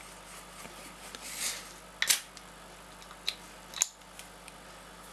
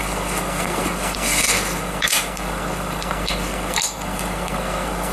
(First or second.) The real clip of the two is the first